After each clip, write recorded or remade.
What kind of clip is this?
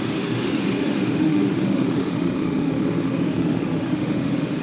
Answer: remade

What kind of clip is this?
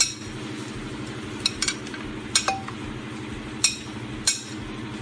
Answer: recorded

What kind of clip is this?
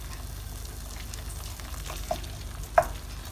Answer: recorded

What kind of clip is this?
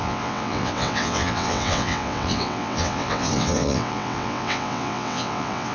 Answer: remade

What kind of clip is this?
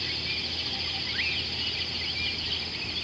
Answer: recorded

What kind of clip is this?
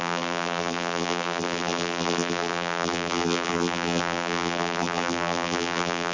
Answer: remade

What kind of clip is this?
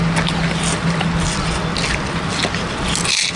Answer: recorded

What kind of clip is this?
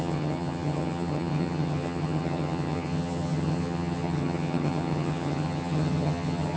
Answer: remade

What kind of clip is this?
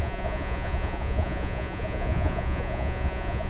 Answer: remade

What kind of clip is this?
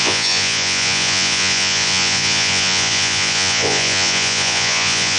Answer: remade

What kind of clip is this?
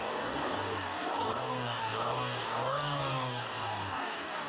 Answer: remade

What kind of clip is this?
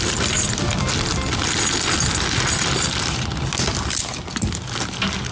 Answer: recorded